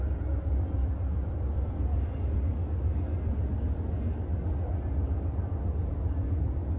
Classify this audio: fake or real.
real